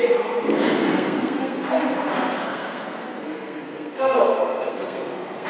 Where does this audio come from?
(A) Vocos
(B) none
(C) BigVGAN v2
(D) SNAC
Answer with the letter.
D